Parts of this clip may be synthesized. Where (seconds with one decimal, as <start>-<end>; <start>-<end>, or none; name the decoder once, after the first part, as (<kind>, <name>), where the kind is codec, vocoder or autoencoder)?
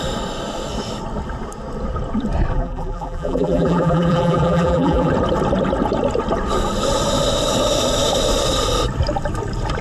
2.5-5.1 (vocoder, BigVGAN v2)